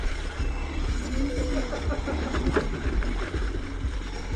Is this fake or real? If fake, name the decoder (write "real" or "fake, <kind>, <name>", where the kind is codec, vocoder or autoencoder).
real